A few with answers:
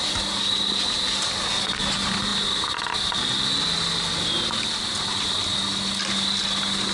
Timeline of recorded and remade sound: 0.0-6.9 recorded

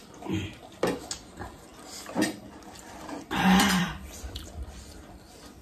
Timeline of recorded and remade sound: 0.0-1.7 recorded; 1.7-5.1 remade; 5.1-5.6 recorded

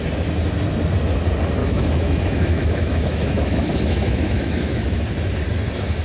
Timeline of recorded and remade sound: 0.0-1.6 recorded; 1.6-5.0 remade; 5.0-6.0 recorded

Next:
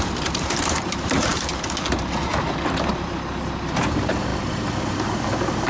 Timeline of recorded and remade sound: 0.0-1.3 remade; 1.3-1.9 recorded; 1.9-2.3 remade; 2.3-2.9 recorded; 2.9-4.3 remade; 4.3-4.9 recorded; 4.9-5.7 remade

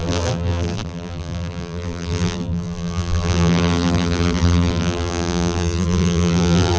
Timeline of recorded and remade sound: 0.0-6.8 remade

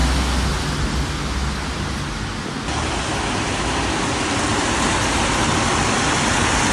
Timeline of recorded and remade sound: 0.0-4.5 recorded; 4.5-5.5 remade; 5.5-6.7 recorded

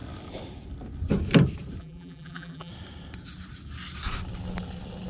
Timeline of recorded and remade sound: 0.0-1.8 recorded; 1.8-2.7 remade; 2.7-5.1 recorded

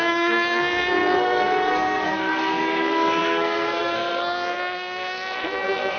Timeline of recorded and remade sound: 0.0-6.0 remade